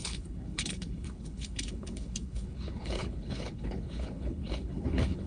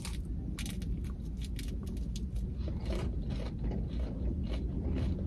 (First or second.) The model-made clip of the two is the first